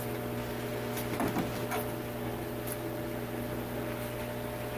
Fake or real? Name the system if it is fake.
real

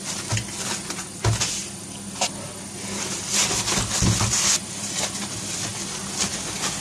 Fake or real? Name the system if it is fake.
real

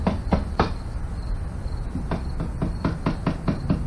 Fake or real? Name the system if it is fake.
real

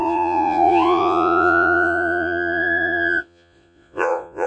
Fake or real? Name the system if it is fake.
fake, vocoder, Vocos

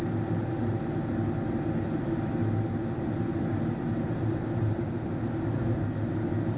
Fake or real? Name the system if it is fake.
real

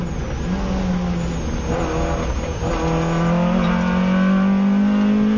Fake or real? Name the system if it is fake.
real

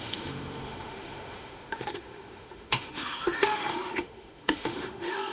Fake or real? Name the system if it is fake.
fake, autoencoder, DAC-VAE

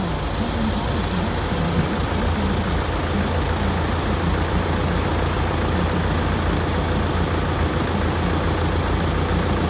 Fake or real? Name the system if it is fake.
real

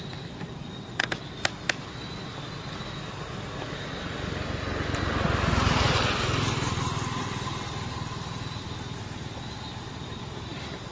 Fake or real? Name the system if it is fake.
real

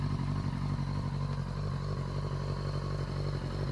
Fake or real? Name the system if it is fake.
real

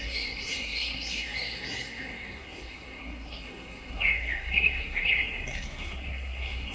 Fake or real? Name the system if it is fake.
fake, codec, SNAC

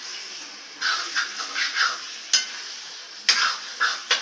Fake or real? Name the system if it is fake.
real